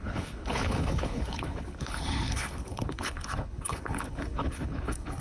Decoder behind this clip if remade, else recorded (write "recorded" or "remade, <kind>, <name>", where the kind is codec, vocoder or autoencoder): remade, codec, HILCodec